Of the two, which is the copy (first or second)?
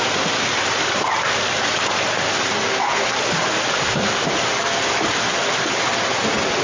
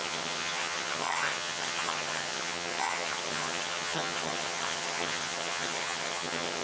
second